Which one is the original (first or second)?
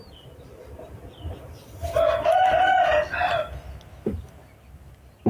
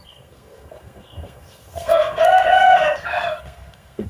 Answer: first